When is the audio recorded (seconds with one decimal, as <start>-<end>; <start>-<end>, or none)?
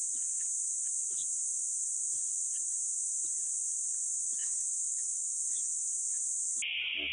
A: 0.0-4.4; 5.9-7.1